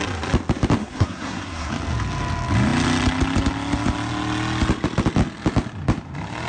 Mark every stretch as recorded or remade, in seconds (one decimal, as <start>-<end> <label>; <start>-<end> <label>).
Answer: 0.0-0.8 recorded; 0.8-1.7 remade; 1.7-6.5 recorded